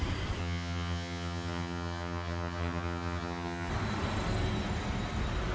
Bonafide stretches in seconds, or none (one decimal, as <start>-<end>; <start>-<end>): 0.0-0.4; 3.7-5.5